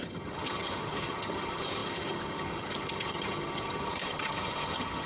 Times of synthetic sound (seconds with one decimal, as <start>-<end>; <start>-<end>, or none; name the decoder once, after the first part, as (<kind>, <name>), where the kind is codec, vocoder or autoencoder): 0.0-5.1 (vocoder, HiFi-GAN)